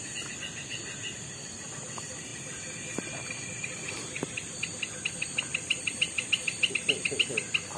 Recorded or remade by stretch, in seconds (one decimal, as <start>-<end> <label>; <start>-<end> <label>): 0.0-2.3 recorded; 2.3-6.7 remade; 6.7-7.8 recorded